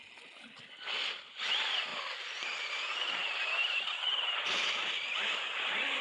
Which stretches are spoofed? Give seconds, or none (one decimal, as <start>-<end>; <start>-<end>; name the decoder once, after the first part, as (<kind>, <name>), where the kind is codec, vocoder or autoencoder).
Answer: none